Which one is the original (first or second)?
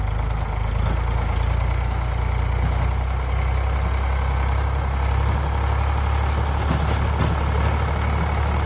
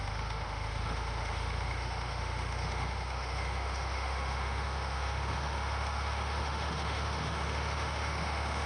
first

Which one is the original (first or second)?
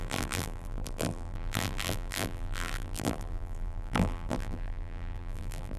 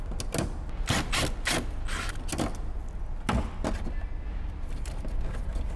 second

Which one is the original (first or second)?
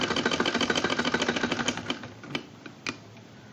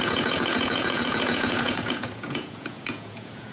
first